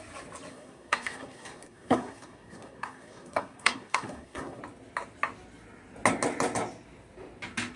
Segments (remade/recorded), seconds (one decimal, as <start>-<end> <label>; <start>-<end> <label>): 0.0-0.5 recorded; 0.5-4.6 remade; 4.6-7.8 recorded